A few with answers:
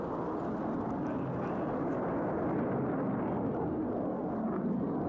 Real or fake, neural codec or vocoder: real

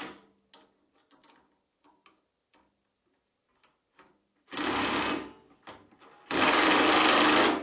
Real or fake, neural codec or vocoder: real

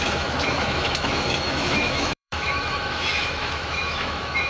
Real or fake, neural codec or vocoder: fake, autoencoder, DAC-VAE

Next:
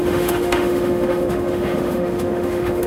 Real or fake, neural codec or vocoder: fake, autoencoder, DAC-VAE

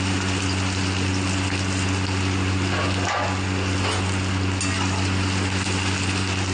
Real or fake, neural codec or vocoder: real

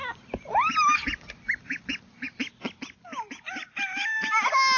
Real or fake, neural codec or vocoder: real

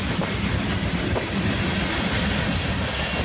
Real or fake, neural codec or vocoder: real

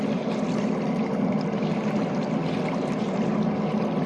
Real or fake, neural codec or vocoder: real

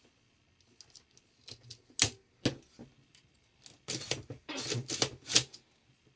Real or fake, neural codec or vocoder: real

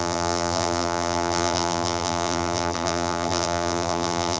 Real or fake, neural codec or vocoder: fake, vocoder, BigVGAN v2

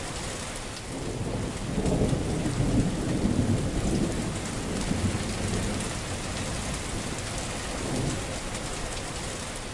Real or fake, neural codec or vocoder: real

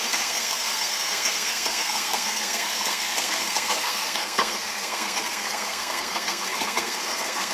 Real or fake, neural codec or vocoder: fake, codec, SNAC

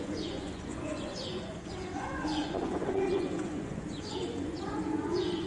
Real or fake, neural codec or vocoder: fake, vocoder, Vocos